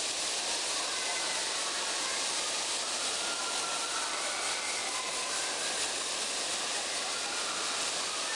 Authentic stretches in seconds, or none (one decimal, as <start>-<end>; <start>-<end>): 0.0-8.3